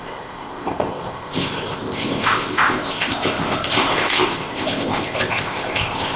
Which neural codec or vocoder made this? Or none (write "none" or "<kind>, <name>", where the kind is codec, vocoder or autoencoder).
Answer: codec, ZipCodec